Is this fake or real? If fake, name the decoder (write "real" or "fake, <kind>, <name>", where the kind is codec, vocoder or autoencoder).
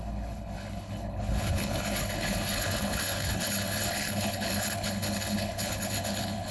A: fake, codec, HILCodec